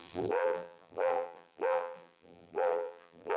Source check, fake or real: fake